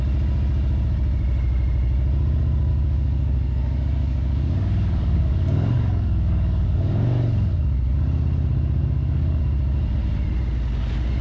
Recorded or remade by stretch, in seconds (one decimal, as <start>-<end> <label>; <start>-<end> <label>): 0.0-2.7 recorded; 2.7-7.5 remade; 7.5-8.8 recorded; 8.8-9.4 remade; 9.4-11.2 recorded